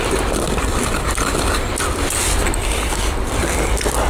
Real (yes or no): yes